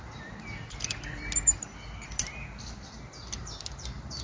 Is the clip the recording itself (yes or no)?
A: yes